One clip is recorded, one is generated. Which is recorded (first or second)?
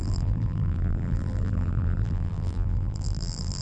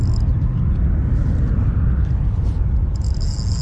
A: second